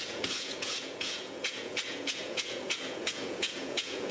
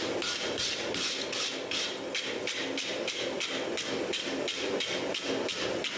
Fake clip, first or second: first